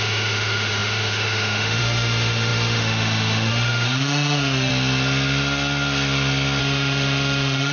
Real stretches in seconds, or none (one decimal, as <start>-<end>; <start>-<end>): 4.7-6.6